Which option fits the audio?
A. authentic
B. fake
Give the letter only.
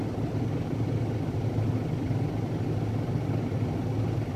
A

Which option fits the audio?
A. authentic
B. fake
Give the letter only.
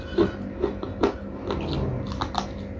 A